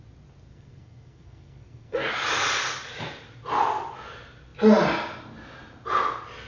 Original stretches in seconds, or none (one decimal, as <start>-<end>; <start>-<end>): 0.0-0.5; 2.1-6.5